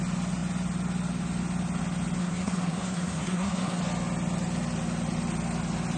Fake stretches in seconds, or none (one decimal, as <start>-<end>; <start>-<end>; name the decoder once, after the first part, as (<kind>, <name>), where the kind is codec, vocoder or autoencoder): 2.2-3.8 (codec, SNAC)